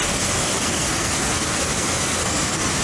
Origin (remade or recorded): remade